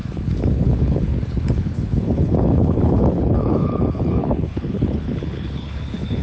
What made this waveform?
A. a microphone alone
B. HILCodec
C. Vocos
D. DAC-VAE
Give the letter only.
B